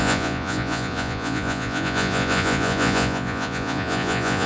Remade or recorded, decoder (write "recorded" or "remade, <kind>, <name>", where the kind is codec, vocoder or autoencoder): remade, vocoder, Vocos